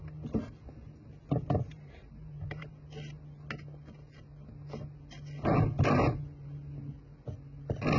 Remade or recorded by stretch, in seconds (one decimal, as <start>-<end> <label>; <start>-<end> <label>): 0.0-1.2 recorded; 1.2-2.7 remade; 2.7-8.0 recorded